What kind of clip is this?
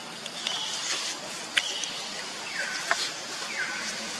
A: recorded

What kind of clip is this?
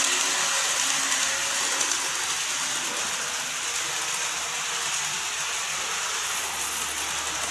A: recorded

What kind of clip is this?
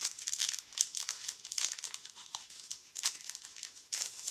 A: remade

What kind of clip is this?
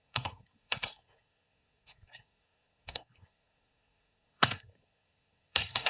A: remade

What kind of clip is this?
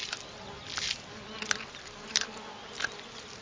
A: recorded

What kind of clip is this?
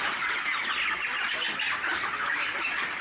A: recorded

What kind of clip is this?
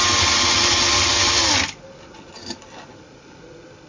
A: recorded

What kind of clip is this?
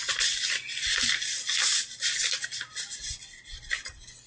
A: recorded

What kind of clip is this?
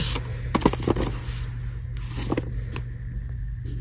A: recorded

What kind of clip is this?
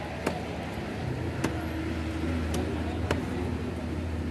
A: recorded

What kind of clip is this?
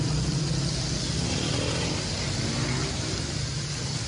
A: recorded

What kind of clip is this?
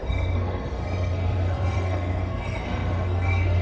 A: remade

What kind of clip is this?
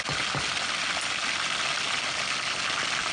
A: recorded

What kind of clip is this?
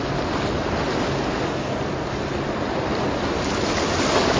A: recorded